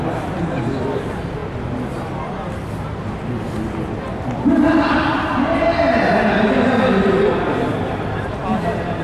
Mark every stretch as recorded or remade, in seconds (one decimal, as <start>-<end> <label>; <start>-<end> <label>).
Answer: 0.0-9.0 recorded